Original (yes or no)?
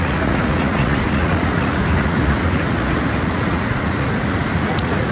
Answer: no